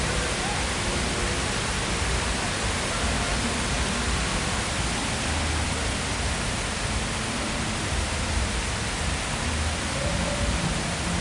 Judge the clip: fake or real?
real